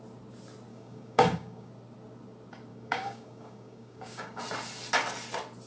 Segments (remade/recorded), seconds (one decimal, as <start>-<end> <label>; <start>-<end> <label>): 0.0-0.7 recorded; 0.7-1.7 remade; 1.7-2.7 recorded; 2.7-4.4 remade; 4.4-5.7 recorded